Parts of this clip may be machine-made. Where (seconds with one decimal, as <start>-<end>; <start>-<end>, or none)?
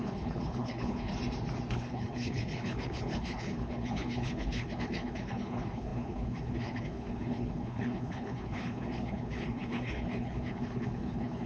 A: 0.0-1.1; 1.7-11.5